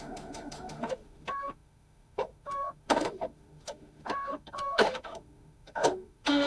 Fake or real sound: fake